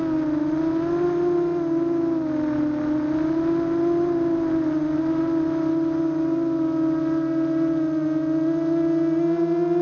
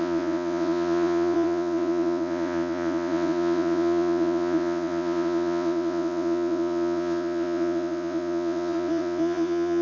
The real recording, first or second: first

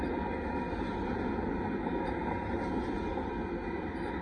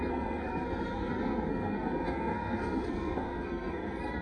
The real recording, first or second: first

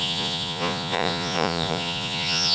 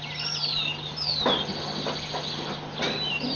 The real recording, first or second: second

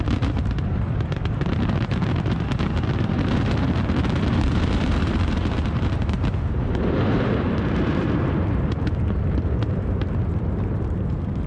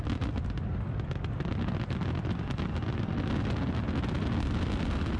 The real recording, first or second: second